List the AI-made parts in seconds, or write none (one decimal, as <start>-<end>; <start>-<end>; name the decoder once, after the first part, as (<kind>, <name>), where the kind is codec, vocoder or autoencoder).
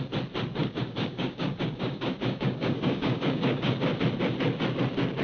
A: 0.6-3.7 (codec, DAC)